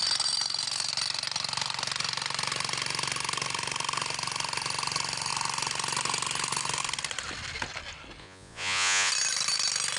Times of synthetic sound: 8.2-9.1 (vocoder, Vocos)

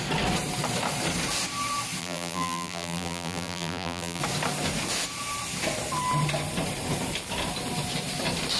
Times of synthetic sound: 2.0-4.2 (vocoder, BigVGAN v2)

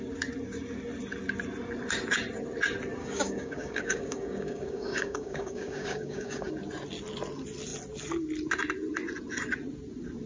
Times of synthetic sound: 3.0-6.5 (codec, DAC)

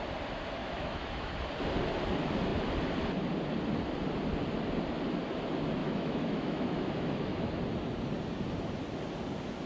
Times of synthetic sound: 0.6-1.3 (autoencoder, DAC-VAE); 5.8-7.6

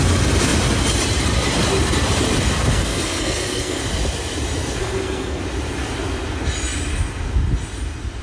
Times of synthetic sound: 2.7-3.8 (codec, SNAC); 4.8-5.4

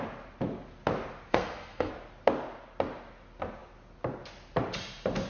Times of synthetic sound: 1.3-1.9 (codec, SNAC)